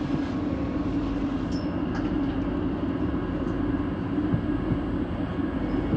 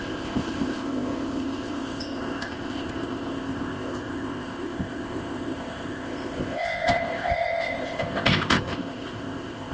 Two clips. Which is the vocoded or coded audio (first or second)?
second